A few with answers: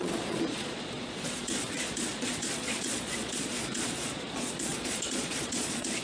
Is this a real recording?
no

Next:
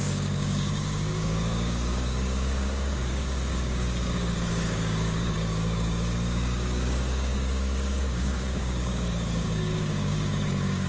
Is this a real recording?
no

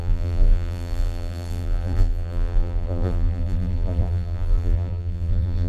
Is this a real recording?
no